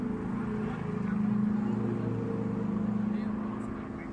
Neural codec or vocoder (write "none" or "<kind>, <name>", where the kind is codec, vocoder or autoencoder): none